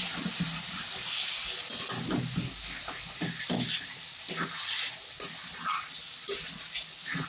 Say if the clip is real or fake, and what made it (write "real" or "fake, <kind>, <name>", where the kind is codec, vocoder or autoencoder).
real